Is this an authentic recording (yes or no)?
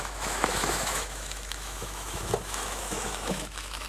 no